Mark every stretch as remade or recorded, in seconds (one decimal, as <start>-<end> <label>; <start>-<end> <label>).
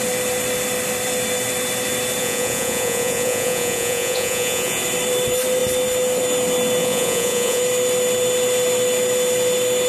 0.0-2.2 recorded; 2.2-4.8 remade; 4.8-6.8 recorded; 6.8-7.6 remade; 7.6-9.9 recorded